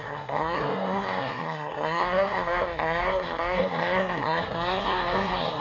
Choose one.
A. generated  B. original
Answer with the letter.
A